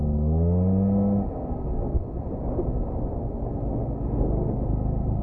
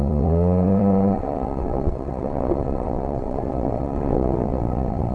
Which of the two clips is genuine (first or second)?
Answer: first